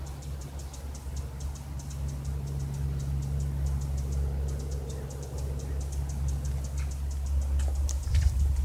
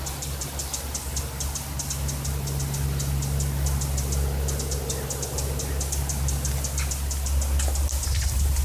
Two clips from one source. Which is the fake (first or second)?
first